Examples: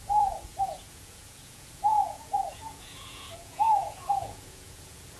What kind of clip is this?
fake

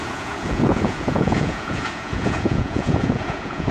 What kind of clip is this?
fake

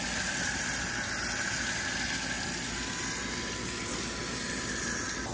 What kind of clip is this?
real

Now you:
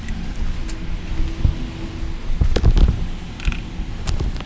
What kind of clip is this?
real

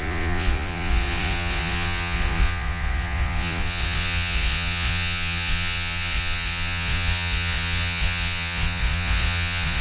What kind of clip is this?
fake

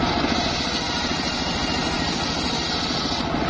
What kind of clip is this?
real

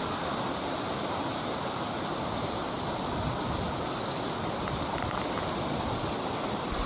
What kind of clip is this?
real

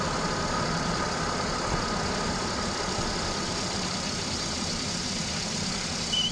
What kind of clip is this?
real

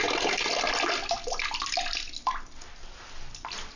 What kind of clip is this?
real